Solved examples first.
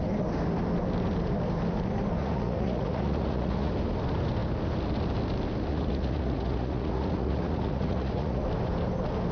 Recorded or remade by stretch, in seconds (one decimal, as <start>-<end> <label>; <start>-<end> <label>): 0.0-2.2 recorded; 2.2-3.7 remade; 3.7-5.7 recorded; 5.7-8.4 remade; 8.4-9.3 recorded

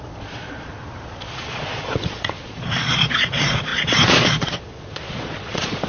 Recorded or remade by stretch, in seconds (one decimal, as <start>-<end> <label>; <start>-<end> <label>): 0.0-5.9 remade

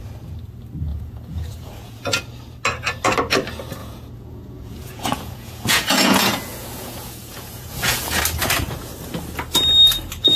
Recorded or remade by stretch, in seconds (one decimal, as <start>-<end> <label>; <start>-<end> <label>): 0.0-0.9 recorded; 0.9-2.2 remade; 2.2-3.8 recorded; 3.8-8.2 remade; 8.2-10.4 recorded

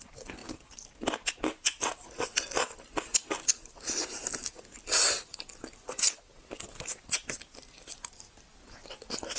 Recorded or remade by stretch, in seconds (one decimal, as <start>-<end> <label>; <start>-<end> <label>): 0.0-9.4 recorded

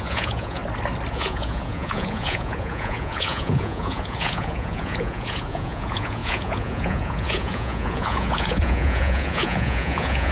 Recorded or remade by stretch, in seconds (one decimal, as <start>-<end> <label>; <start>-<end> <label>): 0.0-0.6 remade; 0.6-1.1 recorded; 1.1-10.3 remade

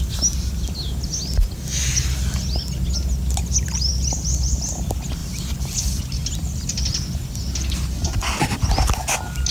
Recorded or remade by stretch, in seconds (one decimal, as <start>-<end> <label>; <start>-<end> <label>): 0.0-9.5 recorded